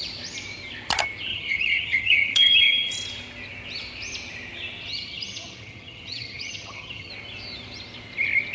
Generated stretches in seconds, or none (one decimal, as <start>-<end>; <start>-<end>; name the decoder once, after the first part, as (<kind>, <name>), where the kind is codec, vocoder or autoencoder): 1.3-2.9 (vocoder, HiFi-GAN); 4.9-7.1